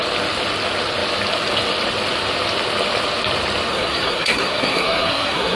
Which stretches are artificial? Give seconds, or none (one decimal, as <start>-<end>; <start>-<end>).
3.7-5.6